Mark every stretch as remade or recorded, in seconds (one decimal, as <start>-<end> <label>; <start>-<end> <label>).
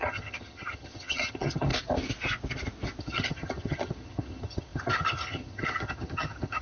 0.0-1.7 remade; 1.7-3.0 recorded; 3.0-6.6 remade